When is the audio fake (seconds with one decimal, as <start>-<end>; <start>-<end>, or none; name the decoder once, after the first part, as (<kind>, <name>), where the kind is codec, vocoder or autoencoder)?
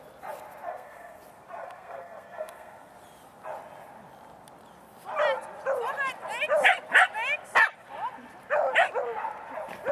0.7-1.2 (codec, SNAC); 1.6-2.9